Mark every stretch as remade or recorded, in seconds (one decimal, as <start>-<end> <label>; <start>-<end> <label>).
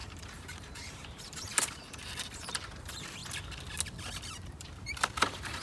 0.0-1.5 remade; 1.5-2.4 recorded; 2.4-3.2 remade; 3.2-4.1 recorded; 4.1-5.6 remade